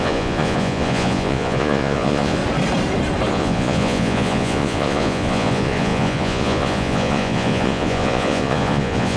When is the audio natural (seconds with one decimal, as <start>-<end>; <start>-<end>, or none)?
2.4-3.3